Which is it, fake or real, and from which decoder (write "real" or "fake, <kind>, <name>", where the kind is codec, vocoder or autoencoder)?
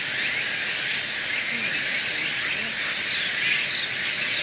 real